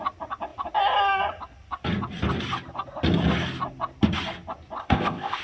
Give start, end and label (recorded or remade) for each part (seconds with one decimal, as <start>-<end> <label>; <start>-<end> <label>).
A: 0.0-4.8 recorded; 4.8-5.4 remade